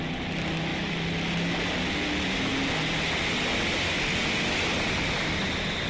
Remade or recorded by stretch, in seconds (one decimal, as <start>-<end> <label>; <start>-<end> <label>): 0.0-5.9 recorded